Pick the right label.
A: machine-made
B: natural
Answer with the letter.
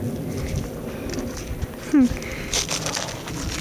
B